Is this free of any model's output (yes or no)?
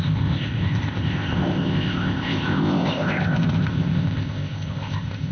no